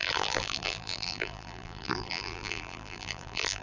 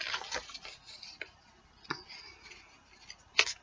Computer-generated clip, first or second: first